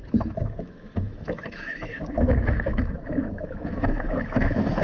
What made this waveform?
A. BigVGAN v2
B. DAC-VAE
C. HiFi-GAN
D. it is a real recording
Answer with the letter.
B